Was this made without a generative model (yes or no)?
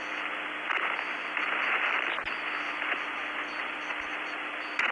yes